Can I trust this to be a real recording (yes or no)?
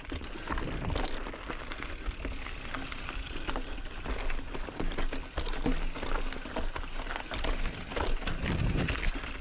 yes